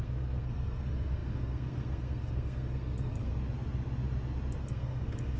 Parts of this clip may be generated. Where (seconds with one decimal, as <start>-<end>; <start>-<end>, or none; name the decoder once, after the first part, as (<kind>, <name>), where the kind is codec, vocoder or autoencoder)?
0.0-3.3 (codec, SNAC); 4.6-5.4